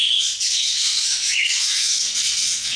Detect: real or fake fake